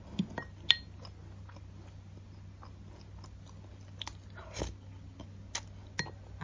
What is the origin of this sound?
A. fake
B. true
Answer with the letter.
B